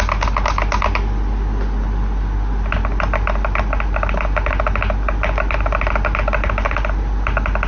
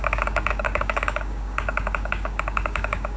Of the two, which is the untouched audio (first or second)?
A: first